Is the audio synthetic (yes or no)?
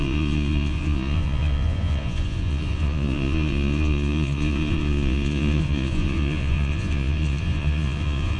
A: yes